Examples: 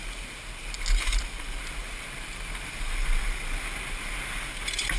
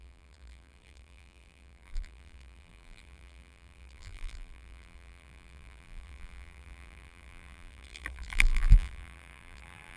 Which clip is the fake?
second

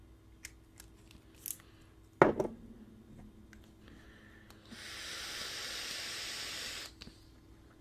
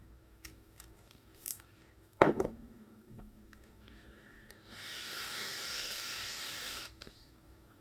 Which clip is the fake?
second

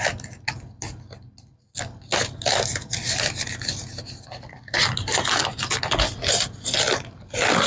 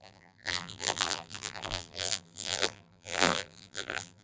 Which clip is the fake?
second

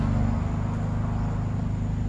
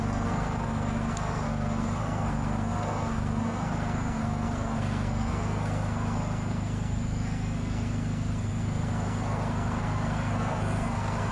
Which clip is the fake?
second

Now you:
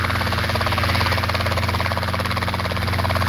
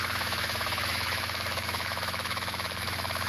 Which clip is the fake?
second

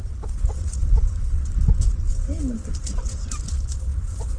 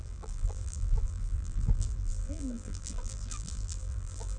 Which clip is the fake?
second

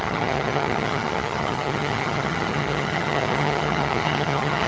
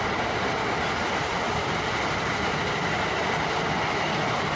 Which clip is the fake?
first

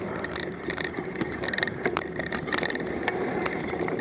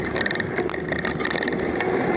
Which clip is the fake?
first